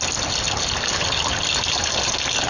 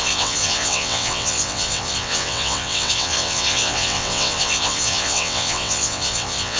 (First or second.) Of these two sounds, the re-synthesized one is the second